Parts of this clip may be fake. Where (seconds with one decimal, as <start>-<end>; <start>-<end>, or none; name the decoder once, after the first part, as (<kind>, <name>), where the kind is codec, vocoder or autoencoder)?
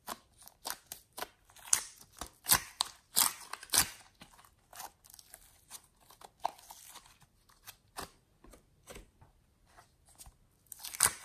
none